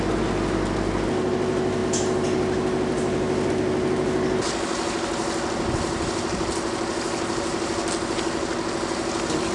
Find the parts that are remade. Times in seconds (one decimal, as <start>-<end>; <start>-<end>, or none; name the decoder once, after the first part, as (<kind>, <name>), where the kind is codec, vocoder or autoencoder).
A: none